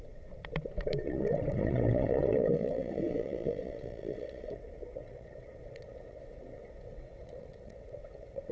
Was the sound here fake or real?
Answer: fake